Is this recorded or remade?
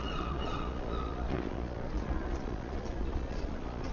remade